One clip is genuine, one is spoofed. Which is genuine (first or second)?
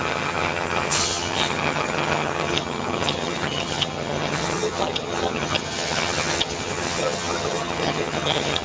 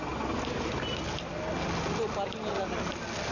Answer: second